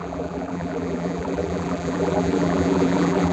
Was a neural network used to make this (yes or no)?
yes